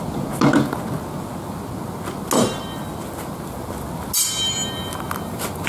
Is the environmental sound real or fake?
real